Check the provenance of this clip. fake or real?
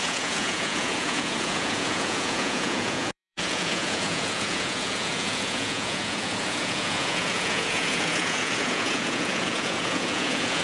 fake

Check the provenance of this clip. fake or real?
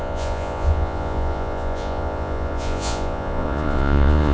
fake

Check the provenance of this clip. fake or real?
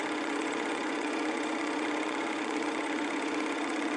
fake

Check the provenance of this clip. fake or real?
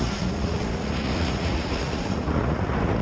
fake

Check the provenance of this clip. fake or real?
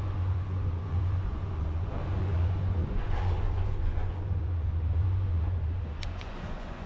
fake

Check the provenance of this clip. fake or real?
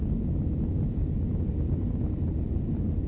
fake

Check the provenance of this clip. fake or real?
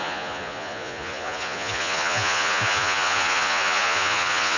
fake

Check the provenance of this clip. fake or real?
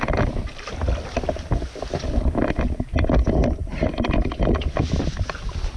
real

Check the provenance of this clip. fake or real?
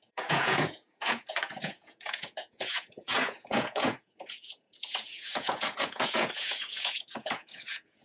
fake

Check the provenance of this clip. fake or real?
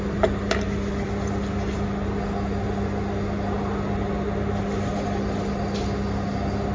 real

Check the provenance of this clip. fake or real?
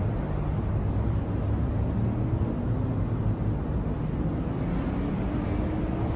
real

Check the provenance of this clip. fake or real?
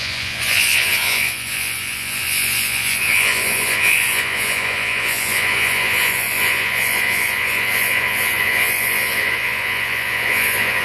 fake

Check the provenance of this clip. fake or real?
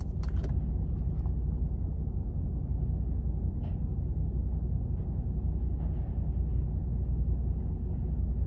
real